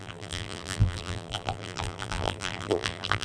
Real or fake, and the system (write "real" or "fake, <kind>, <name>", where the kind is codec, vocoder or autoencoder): fake, vocoder, BigVGAN v2